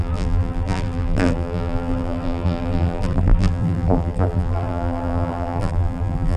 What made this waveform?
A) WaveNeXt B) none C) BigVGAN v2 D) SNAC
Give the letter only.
C